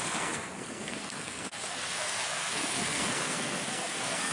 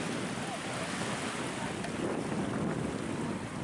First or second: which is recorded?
second